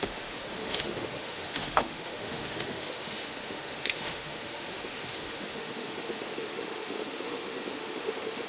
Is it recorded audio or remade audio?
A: remade